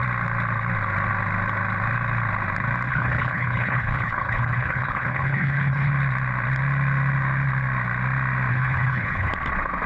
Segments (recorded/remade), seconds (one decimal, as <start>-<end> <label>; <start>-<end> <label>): 0.0-2.9 recorded; 2.9-5.9 remade; 5.9-8.5 recorded; 8.5-9.3 remade; 9.3-9.9 recorded